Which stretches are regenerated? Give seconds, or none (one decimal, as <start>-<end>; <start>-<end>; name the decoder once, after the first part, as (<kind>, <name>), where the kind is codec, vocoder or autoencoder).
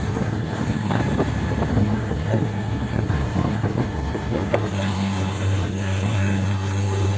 0.0-1.0 (codec, SNAC); 1.7-7.2